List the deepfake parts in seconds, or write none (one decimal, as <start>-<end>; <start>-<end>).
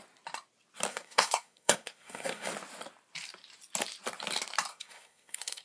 0.9-2.5; 4.7-5.6